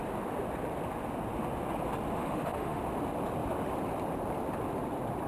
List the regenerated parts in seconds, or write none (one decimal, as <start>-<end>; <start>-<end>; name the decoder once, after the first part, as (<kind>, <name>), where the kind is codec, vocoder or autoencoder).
2.1-2.8 (autoencoder, DAC-VAE)